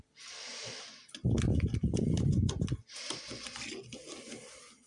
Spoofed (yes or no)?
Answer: yes